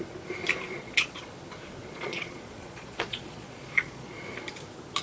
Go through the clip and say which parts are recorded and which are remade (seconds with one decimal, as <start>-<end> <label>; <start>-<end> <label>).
0.0-0.7 recorded; 0.7-1.3 remade; 1.3-1.8 recorded; 1.8-4.2 remade; 4.2-5.0 recorded